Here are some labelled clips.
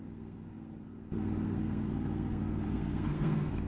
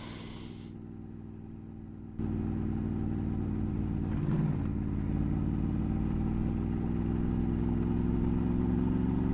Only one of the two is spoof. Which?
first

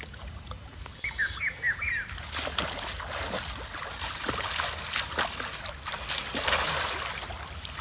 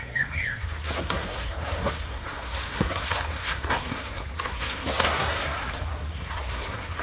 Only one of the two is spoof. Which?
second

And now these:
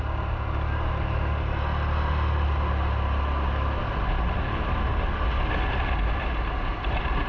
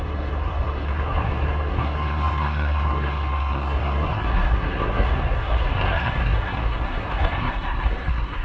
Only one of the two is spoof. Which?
second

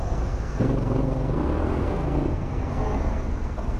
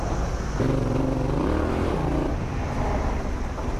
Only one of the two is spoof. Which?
first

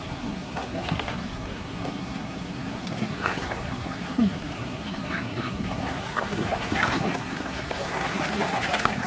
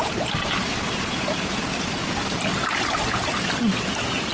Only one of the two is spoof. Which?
first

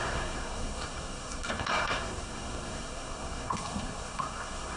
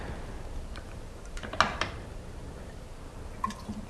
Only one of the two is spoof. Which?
first